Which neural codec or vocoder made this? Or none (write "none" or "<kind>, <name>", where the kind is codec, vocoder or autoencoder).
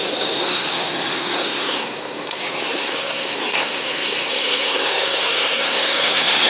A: codec, SNAC